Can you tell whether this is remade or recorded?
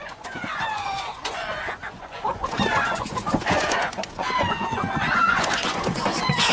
remade